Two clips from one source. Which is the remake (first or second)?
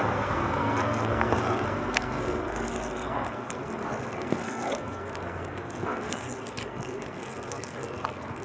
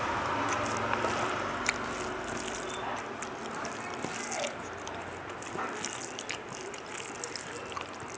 first